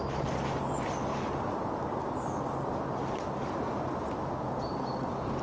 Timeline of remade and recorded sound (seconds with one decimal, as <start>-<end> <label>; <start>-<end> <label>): 0.0-5.4 recorded